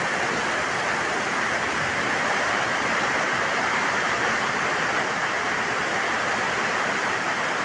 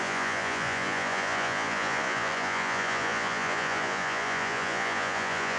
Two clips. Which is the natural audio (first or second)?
first